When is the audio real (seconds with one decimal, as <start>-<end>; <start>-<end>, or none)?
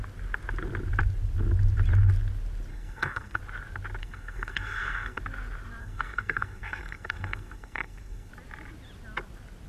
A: 0.0-2.7; 3.4-4.0; 5.2-5.8; 8.3-9.7